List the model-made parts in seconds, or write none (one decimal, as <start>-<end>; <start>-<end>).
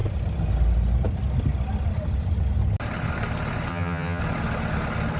3.7-4.2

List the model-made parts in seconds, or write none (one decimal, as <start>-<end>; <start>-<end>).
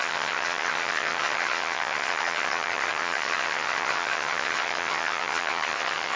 0.0-6.2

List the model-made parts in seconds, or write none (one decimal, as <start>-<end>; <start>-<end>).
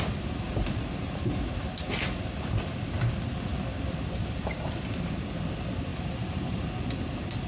none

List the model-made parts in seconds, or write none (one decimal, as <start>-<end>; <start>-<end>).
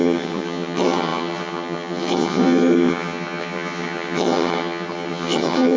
0.0-5.8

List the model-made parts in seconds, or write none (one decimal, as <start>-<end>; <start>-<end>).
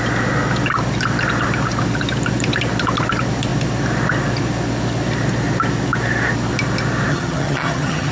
7.1-8.1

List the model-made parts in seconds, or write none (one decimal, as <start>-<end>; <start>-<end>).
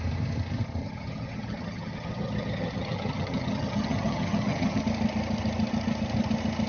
0.8-4.8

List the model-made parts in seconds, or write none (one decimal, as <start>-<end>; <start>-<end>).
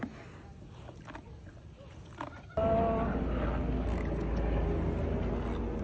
none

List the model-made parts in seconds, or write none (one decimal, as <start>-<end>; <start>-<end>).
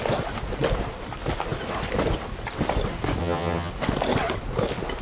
3.2-3.7